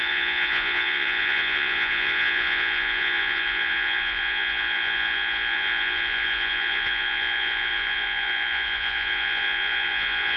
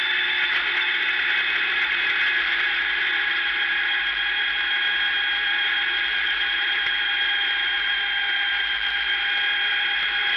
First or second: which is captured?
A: second